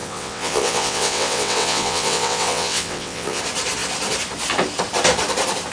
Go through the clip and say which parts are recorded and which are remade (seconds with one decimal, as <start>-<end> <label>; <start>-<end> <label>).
0.0-3.4 remade; 3.4-5.7 recorded